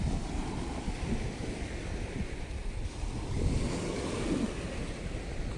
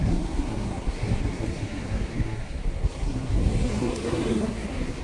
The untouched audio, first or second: first